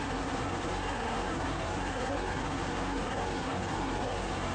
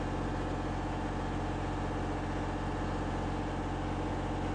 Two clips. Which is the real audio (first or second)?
second